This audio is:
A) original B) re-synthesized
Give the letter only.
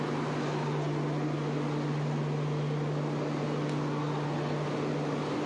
A